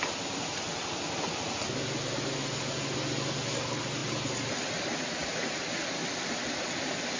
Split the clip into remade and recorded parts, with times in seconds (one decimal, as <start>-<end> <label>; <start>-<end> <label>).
0.0-7.2 recorded